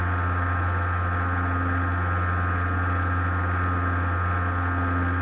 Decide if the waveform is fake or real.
real